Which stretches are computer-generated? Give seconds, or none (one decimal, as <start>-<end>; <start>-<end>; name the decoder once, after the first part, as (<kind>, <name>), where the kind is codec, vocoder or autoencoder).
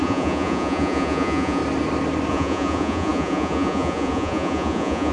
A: 0.0-1.6 (vocoder, Vocos); 2.3-5.1